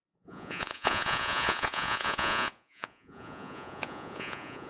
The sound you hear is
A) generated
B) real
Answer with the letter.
A